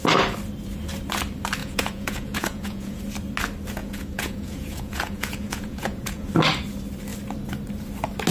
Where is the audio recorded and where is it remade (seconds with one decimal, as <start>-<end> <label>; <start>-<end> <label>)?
0.0-1.6 recorded; 1.6-3.0 remade; 3.0-3.8 recorded; 3.8-6.3 remade; 6.3-8.3 recorded

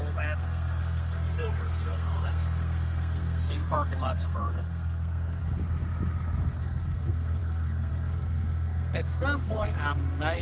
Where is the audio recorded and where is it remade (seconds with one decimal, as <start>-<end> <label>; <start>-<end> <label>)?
0.0-5.4 remade; 5.4-6.6 recorded; 6.6-10.4 remade

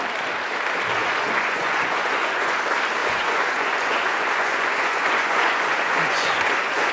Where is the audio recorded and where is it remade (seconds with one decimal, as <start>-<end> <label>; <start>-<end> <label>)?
0.0-1.0 recorded; 1.0-2.6 remade; 2.6-3.0 recorded; 3.0-6.9 remade

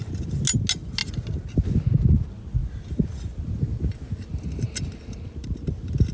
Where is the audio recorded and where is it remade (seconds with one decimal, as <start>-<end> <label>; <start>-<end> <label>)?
0.0-6.1 recorded

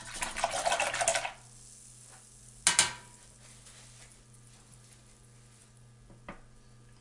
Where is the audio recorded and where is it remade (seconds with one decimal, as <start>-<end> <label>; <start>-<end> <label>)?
0.0-7.0 recorded

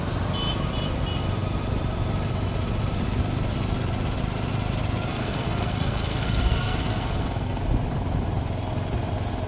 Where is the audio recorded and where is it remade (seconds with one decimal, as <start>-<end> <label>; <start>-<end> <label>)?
0.0-5.1 recorded; 5.1-7.6 remade; 7.6-9.5 recorded

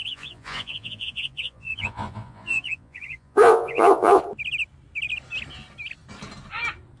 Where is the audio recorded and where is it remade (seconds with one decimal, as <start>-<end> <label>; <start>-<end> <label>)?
0.0-4.2 remade; 4.2-7.0 recorded

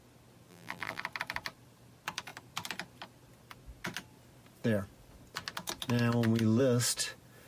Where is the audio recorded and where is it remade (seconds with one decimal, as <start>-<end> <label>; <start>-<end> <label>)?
0.0-0.5 recorded; 0.5-1.0 remade; 1.0-7.5 recorded